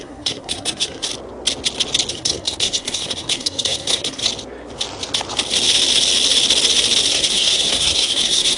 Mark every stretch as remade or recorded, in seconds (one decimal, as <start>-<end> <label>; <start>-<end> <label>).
0.0-1.1 remade; 1.1-2.1 recorded; 2.1-4.2 remade; 4.2-7.1 recorded; 7.1-8.6 remade